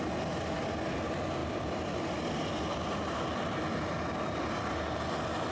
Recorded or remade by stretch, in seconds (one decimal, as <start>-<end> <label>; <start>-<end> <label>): 0.0-1.4 recorded; 1.4-4.5 remade; 4.5-5.5 recorded